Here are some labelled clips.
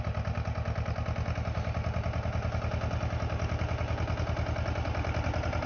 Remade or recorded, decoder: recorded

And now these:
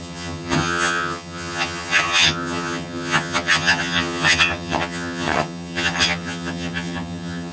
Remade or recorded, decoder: remade, vocoder, HiFi-GAN